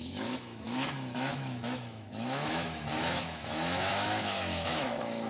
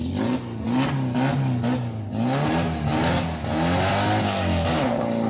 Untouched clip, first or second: second